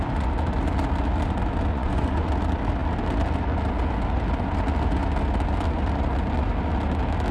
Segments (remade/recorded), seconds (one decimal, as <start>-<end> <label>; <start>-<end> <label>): 0.0-1.7 recorded; 1.7-2.3 remade; 2.3-7.3 recorded